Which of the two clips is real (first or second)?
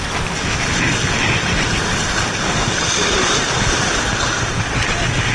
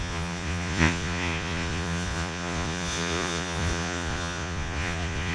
first